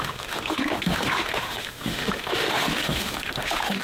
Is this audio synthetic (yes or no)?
yes